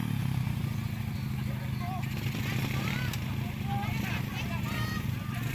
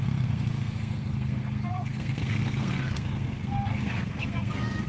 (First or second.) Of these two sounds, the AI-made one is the second